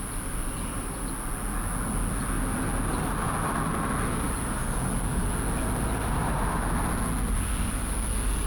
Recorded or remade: recorded